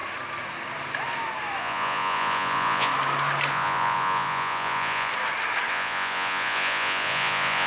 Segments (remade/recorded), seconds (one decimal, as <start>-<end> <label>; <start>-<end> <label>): 0.0-1.6 recorded; 1.6-2.9 remade; 2.9-3.5 recorded; 3.5-5.1 remade; 5.1-5.7 recorded; 5.7-7.7 remade